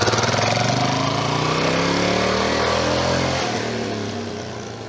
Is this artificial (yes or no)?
no